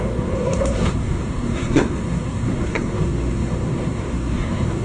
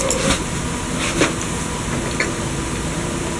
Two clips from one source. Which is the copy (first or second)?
first